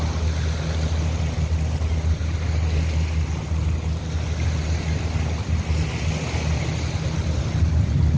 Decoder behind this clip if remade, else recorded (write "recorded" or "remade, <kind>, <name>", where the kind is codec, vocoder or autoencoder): recorded